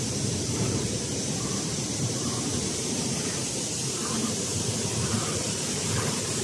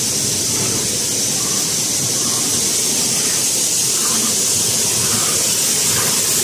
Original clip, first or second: second